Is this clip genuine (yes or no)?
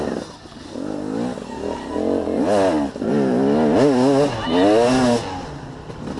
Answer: yes